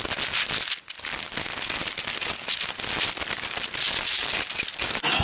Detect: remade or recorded recorded